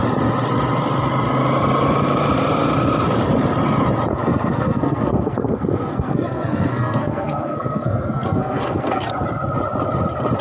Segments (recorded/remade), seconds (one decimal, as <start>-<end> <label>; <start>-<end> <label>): 0.0-4.1 recorded; 4.1-9.1 remade; 9.1-10.4 recorded